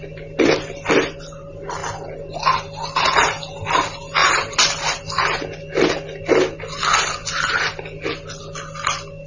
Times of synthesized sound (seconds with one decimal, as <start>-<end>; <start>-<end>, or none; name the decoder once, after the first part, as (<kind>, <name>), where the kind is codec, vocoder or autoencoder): none